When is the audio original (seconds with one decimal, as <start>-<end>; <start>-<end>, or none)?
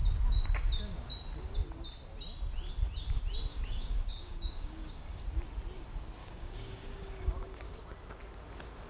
0.0-3.5; 5.2-6.2; 7.8-8.9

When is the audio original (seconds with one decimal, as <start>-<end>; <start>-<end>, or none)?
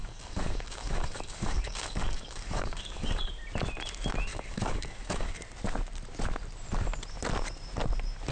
3.3-4.3; 5.4-8.3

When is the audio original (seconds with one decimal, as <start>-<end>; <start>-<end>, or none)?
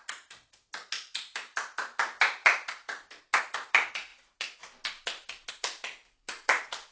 0.0-6.9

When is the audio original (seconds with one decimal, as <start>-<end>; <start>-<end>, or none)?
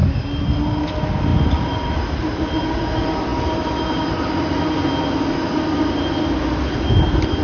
0.0-7.4